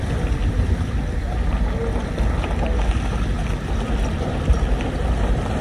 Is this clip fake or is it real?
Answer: real